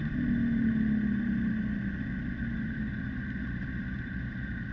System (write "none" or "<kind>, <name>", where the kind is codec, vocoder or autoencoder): none